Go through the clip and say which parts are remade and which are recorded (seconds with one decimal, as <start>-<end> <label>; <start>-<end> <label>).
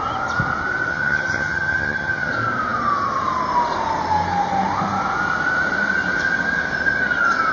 0.0-0.9 recorded; 0.9-2.3 remade; 2.3-7.5 recorded